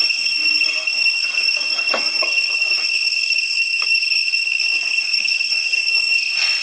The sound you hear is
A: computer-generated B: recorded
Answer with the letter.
A